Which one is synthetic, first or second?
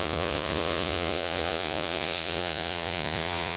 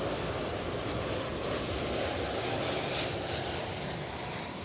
first